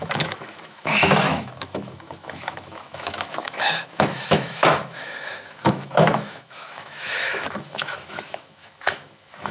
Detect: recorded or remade remade